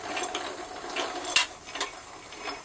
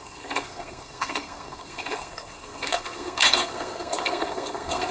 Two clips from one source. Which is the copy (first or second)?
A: second